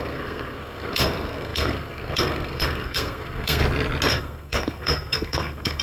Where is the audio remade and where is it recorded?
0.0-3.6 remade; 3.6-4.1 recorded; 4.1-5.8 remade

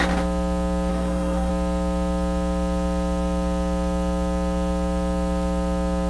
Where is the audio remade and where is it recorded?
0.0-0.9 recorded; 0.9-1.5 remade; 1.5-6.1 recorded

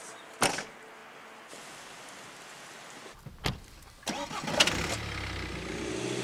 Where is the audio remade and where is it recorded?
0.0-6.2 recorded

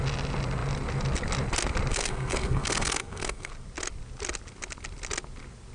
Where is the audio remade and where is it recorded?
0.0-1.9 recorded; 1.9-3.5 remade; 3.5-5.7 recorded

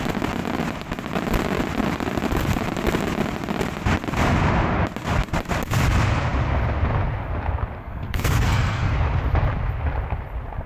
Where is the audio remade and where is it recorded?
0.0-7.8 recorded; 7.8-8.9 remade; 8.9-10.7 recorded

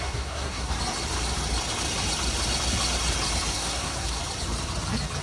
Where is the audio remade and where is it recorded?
0.0-0.7 remade; 0.7-3.5 recorded; 3.5-4.2 remade; 4.2-5.2 recorded